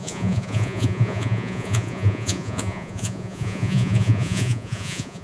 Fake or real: fake